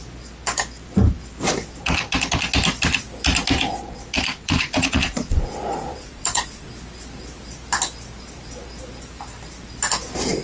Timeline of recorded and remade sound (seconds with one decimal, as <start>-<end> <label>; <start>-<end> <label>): 0.0-4.3 recorded; 4.3-6.7 remade; 6.7-10.4 recorded